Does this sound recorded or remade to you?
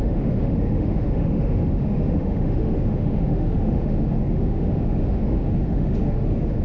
remade